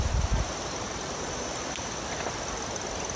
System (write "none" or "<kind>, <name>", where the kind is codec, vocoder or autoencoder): none